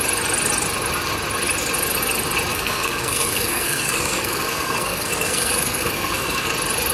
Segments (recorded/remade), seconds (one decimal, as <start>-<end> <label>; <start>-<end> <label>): 0.0-2.5 recorded; 2.5-6.5 remade; 6.5-6.9 recorded